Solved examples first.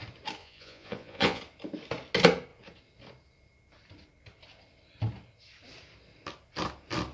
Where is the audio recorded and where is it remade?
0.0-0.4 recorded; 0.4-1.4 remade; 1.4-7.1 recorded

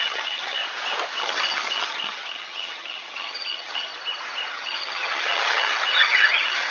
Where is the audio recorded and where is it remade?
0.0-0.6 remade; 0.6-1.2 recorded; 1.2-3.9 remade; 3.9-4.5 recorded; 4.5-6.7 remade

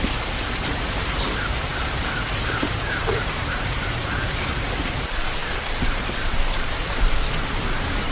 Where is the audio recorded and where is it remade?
0.0-8.1 remade